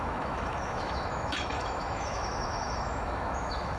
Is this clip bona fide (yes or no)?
no